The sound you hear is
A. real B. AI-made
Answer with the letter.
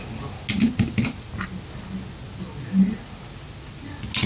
A